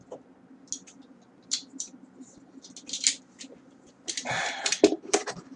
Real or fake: real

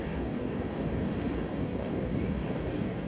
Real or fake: fake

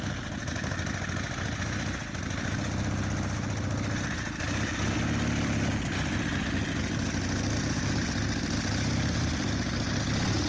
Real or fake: real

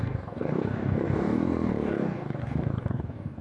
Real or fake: fake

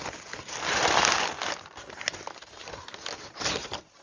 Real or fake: real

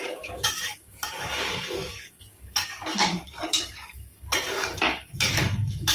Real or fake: fake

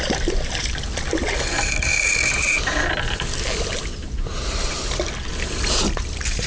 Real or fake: real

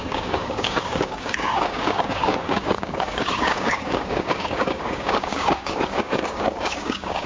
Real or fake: fake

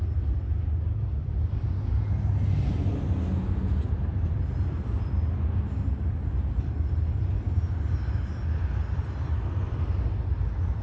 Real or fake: real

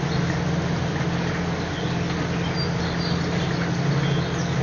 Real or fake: real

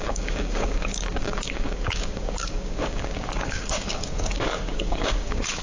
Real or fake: fake